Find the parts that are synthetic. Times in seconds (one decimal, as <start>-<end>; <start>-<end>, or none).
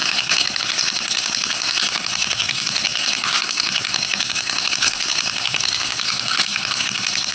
0.0-7.3